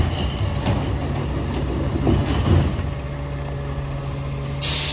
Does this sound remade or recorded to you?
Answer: recorded